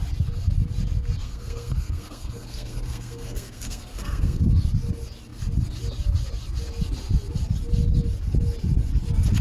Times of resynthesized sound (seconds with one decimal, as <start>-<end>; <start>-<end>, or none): 1.2-4.4